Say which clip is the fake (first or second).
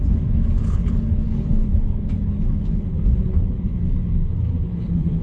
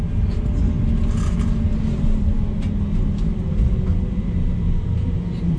first